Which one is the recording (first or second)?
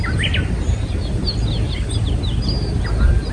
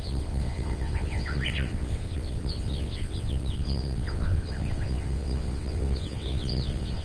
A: first